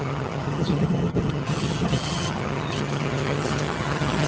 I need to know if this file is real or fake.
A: fake